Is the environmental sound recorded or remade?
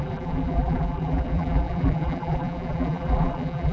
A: remade